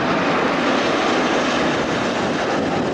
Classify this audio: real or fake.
real